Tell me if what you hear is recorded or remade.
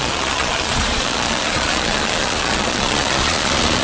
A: remade